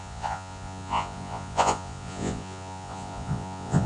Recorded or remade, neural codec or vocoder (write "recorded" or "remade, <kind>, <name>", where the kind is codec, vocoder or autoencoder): remade, vocoder, Vocos